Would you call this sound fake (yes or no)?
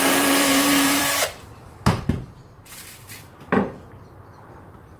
yes